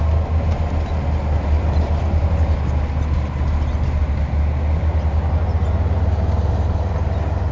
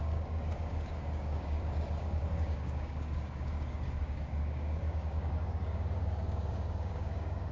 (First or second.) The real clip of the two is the first